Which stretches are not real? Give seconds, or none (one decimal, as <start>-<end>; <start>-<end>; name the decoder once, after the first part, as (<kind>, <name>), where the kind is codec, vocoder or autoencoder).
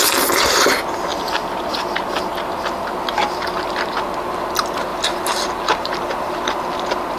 4.9-6.4 (vocoder, BigVGAN v2)